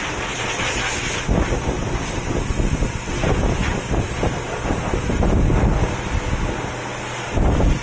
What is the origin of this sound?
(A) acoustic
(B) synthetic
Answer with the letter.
A